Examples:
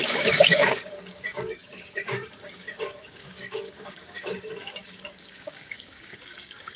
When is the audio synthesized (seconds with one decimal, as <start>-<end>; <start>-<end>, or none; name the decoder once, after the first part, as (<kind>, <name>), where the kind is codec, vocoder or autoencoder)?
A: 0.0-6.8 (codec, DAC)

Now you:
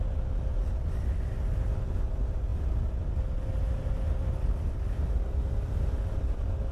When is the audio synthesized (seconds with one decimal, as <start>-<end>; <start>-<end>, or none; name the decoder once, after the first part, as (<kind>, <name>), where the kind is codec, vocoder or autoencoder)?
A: none

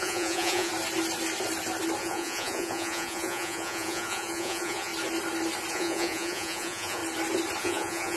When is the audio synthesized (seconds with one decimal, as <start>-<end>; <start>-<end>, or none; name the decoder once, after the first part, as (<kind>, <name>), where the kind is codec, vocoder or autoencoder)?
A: 0.0-0.7 (vocoder, Vocos); 2.0-4.9; 5.7-7.0; 7.6-8.2

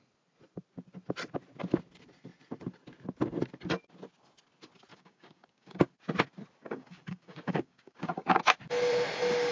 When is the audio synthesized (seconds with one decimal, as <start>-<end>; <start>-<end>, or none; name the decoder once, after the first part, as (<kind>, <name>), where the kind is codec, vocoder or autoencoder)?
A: 4.9-5.9 (codec, DAC); 6.6-8.4

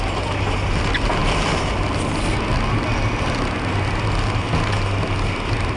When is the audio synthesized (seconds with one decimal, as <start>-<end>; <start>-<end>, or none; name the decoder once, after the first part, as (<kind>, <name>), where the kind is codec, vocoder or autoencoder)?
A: none